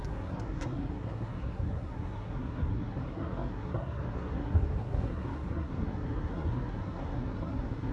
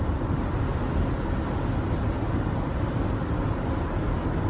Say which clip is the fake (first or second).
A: first